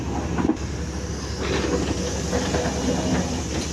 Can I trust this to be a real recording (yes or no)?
yes